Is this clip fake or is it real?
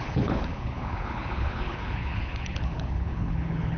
fake